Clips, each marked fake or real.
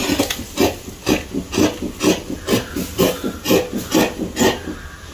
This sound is real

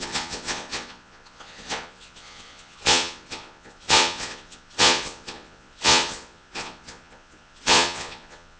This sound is fake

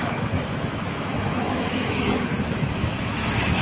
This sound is fake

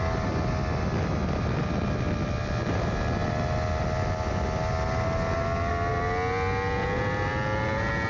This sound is real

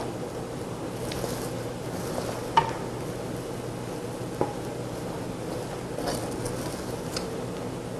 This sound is real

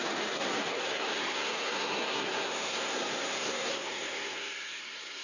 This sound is fake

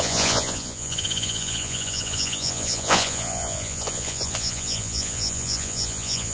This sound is fake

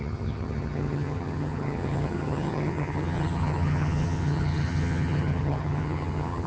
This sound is fake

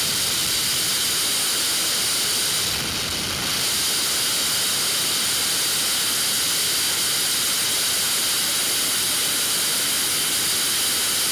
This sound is real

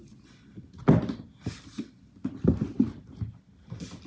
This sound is real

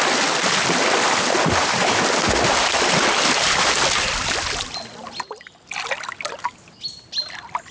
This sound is real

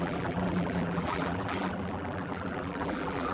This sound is fake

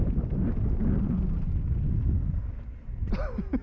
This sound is real